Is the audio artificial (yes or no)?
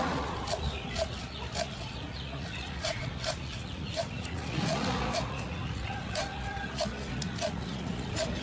yes